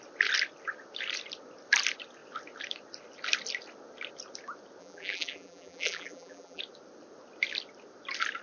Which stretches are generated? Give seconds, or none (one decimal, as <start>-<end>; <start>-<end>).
4.8-6.6